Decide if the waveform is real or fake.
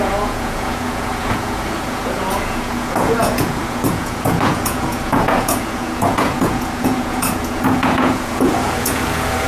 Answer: fake